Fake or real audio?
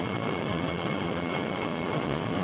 fake